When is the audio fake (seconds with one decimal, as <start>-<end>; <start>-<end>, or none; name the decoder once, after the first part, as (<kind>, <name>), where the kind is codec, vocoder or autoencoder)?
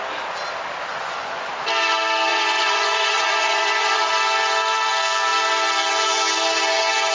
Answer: 0.9-1.5 (vocoder, Vocos); 2.3-4.1